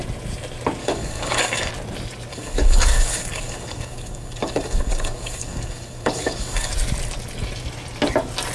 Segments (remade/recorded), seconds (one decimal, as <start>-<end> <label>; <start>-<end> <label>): 0.0-0.8 recorded; 0.8-1.7 remade; 1.7-2.3 recorded; 2.3-6.7 remade; 6.7-8.5 recorded